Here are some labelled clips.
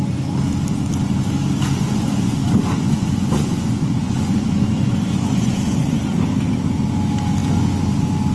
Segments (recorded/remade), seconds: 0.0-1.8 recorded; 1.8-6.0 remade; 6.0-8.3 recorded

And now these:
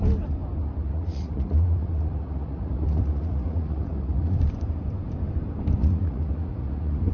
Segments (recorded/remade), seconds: 0.0-0.8 recorded; 0.8-4.4 remade; 4.4-5.8 recorded; 5.8-7.1 remade

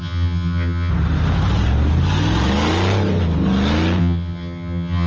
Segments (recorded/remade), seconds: 0.0-0.9 remade; 0.9-4.0 recorded; 4.0-5.1 remade

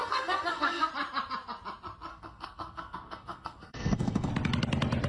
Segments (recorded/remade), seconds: 0.0-0.9 remade; 0.9-2.1 recorded; 2.1-4.3 remade; 4.3-5.1 recorded

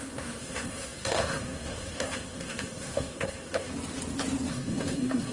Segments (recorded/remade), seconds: 0.0-3.7 remade; 3.7-4.5 recorded; 4.5-5.3 remade